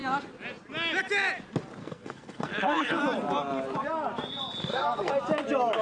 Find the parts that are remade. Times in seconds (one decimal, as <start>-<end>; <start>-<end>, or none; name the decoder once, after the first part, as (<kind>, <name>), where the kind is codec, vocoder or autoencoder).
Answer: 1.8-3.0 (codec, SNAC); 4.6-5.1